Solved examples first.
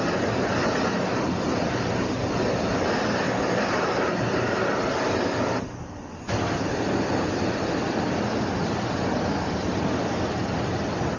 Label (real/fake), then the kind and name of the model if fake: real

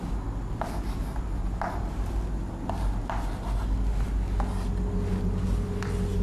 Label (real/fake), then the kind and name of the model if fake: real